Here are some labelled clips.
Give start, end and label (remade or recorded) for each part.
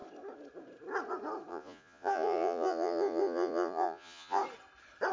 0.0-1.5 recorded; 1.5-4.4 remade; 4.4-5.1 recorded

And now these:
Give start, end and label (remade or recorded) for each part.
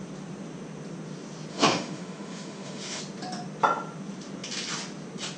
0.0-1.5 recorded; 1.5-3.0 remade; 3.0-5.4 recorded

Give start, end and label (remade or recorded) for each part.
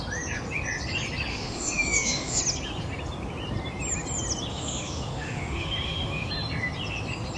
0.0-1.3 recorded; 1.3-2.4 remade; 2.4-4.5 recorded; 4.5-6.3 remade; 6.3-7.4 recorded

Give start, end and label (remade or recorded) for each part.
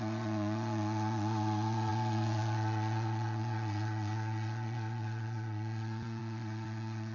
0.0-7.1 remade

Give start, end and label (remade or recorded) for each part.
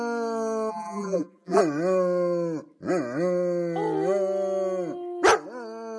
0.0-0.7 recorded; 0.7-1.6 remade; 1.6-6.0 recorded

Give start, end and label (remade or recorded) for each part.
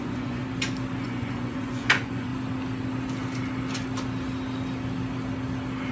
0.0-0.4 remade; 0.4-1.0 recorded; 1.0-2.3 remade; 2.3-5.9 recorded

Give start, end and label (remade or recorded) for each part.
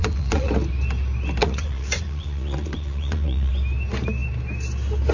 0.0-0.5 remade; 0.5-1.4 recorded; 1.4-3.5 remade; 3.5-5.1 recorded